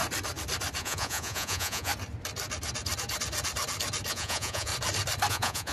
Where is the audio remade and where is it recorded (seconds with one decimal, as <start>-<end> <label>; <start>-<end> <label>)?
0.0-0.8 recorded; 0.8-1.9 remade; 1.9-4.1 recorded; 4.1-4.7 remade; 4.7-5.3 recorded; 5.3-5.7 remade